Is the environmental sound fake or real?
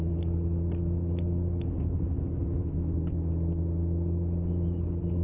real